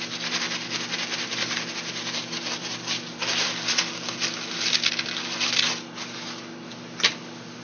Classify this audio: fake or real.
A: real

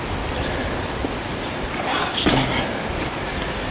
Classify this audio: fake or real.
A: real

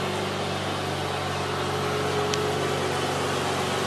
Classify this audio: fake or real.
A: real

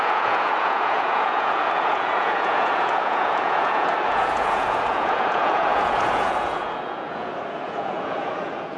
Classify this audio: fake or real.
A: fake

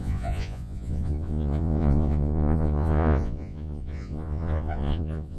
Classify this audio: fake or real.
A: fake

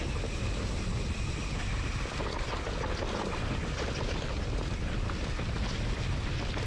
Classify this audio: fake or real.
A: real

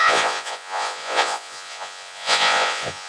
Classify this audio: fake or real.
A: fake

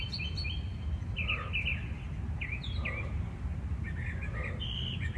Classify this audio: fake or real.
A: real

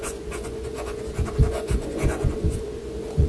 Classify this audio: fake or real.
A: fake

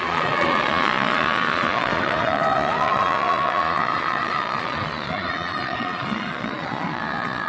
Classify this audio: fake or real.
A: fake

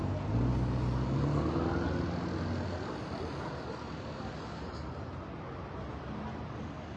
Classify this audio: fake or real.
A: real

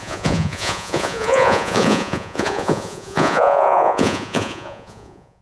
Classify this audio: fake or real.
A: fake